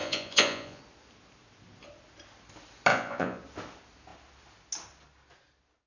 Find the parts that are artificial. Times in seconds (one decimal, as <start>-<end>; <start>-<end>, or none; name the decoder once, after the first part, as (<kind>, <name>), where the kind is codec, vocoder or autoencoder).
0.0-0.8 (vocoder, Vocos); 2.9-3.4